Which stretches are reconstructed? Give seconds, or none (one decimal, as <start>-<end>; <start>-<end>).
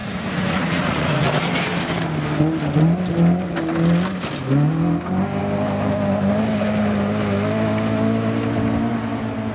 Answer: 0.0-1.3